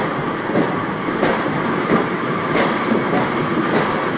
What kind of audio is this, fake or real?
fake